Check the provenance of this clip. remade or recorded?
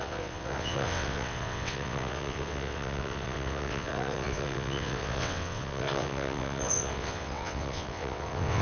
remade